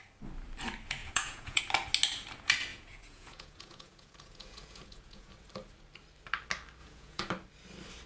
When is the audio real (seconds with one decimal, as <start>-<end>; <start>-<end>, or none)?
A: 0.0-1.0; 1.6-2.7; 5.3-6.8; 7.3-8.1